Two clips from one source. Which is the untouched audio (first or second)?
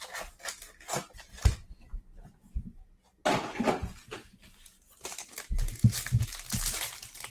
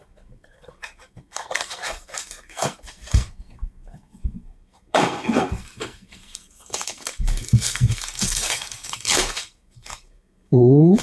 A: first